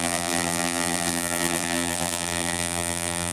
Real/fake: fake